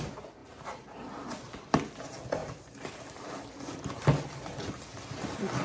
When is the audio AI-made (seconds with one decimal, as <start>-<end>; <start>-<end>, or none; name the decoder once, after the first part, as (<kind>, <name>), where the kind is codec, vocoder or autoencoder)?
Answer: none